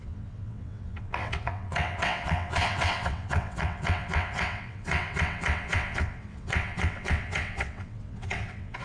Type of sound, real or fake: fake